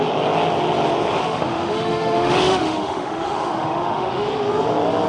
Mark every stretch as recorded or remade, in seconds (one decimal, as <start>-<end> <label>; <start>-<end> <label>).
0.0-1.2 recorded; 1.2-4.3 remade; 4.3-5.1 recorded